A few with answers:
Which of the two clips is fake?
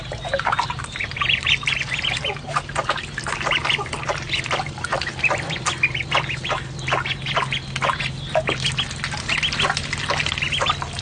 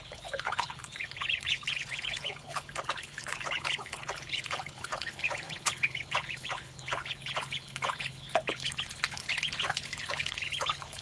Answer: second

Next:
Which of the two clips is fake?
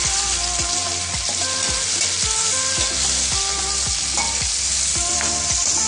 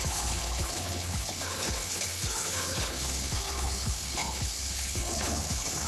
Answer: second